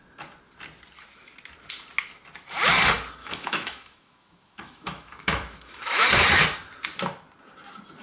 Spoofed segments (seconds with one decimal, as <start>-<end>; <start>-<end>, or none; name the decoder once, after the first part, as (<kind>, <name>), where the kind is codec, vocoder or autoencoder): 3.2-6.0 (autoencoder, DAC-VAE)